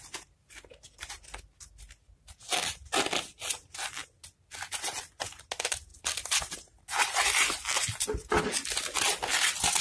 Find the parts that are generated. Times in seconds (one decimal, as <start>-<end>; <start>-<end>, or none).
none